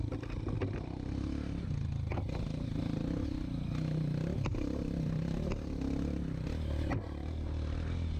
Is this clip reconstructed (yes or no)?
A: no